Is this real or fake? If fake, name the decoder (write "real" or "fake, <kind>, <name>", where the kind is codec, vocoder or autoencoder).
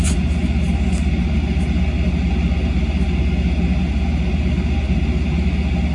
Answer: real